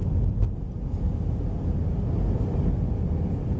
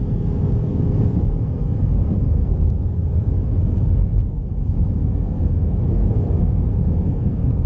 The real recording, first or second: first